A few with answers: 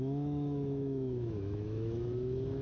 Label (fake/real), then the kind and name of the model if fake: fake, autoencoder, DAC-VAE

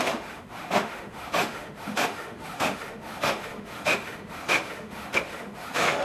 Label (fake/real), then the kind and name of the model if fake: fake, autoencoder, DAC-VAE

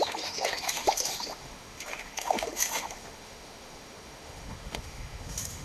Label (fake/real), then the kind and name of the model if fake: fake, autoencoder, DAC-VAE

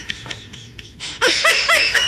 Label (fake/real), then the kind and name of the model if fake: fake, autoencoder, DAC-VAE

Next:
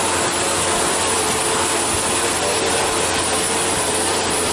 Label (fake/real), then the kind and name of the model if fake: real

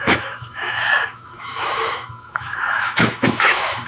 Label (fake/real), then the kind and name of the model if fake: fake, autoencoder, DAC-VAE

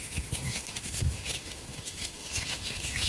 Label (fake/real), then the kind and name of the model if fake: fake, autoencoder, DAC-VAE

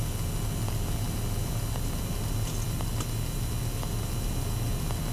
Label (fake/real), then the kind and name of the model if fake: real